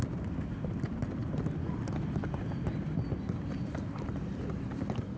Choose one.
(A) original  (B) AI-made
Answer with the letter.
A